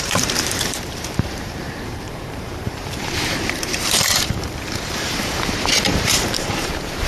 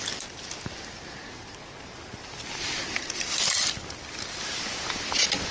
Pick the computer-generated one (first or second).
first